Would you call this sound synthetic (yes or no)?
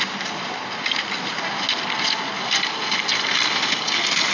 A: no